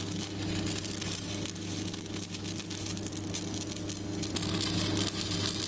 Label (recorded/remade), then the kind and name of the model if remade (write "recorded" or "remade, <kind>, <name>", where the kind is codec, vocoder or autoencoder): recorded